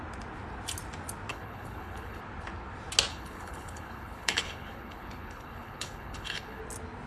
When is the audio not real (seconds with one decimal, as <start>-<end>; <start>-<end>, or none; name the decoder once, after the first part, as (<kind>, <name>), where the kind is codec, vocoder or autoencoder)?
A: 1.3-2.2 (codec, HILCodec); 3.1-6.6